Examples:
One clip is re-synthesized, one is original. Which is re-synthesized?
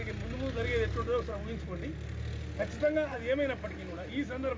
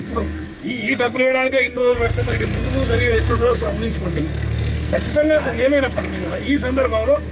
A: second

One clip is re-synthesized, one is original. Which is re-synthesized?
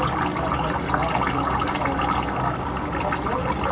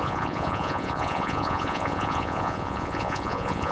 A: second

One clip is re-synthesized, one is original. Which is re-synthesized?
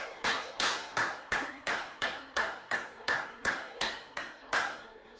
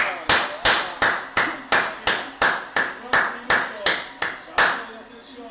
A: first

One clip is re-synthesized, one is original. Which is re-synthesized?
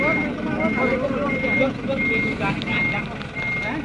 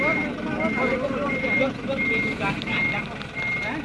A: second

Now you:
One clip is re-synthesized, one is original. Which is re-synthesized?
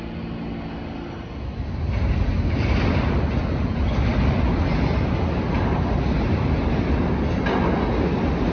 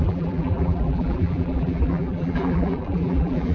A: second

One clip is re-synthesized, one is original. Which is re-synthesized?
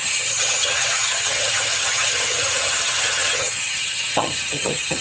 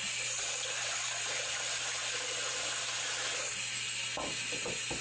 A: first